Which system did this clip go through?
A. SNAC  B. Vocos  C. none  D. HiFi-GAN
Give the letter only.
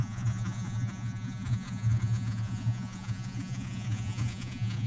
B